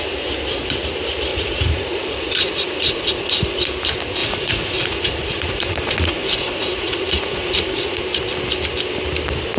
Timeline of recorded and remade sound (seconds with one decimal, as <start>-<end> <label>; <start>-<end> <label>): 0.0-1.3 recorded; 1.3-3.7 remade; 3.7-4.2 recorded; 4.2-8.0 remade; 8.0-9.6 recorded